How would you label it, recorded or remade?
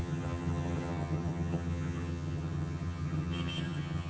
remade